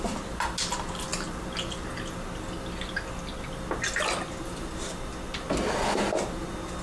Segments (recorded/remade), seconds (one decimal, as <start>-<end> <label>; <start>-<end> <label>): 0.0-6.8 recorded